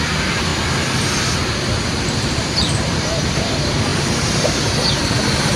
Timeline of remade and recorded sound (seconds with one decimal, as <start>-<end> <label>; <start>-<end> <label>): 0.0-0.5 remade; 0.5-2.2 recorded; 2.2-5.6 remade